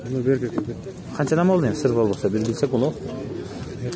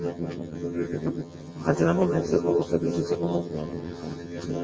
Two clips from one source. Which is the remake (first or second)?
second